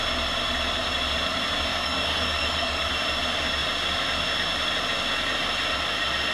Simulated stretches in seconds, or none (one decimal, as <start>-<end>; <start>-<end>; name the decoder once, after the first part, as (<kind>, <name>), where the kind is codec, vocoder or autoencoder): 1.7-2.9 (codec, DAC)